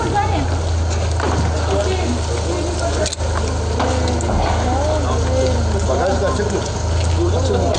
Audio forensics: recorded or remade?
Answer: recorded